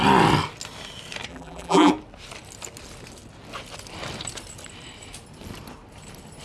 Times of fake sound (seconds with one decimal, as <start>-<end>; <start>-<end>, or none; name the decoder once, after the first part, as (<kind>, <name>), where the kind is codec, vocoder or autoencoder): 1.3-1.9 (vocoder, BigVGAN v2)